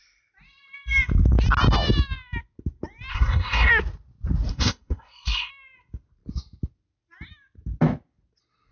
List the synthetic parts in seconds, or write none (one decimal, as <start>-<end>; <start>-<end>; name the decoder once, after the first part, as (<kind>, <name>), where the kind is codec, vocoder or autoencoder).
3.1-3.7 (codec, SNAC); 4.5-5.5